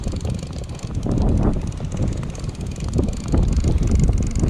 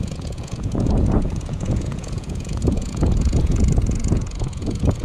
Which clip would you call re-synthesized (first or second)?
second